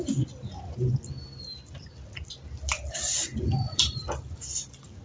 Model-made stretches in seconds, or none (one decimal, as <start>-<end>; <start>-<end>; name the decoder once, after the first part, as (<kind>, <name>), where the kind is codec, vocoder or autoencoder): 3.1-5.0 (vocoder, BigVGAN v2)